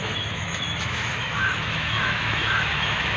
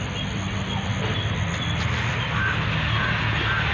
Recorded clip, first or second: second